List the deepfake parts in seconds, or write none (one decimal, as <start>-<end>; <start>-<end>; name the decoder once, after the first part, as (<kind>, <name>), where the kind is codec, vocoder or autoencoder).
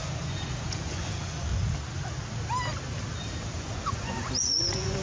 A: 0.0-1.5 (vocoder, Vocos); 3.6-5.0